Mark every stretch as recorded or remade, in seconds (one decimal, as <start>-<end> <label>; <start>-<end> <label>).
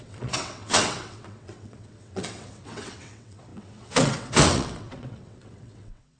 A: 0.0-6.2 remade